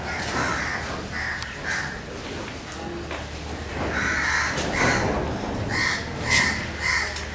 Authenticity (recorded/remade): recorded